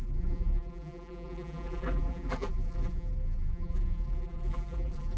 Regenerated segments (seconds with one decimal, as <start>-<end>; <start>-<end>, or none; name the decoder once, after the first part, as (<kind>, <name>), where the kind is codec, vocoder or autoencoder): 0.0-5.2 (vocoder, BigVGAN v2)